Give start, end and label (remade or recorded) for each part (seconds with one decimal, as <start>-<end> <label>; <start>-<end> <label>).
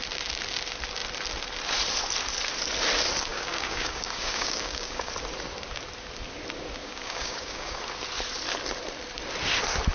0.0-3.3 recorded; 3.3-5.1 remade; 5.1-6.8 recorded; 6.8-7.8 remade; 7.8-9.9 recorded